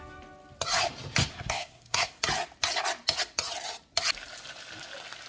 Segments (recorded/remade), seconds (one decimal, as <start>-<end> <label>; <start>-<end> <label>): 0.0-1.3 recorded; 1.3-2.2 remade; 2.2-5.3 recorded